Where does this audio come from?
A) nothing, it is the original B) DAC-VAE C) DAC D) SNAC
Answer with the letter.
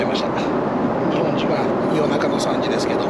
A